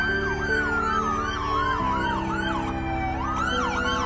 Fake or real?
real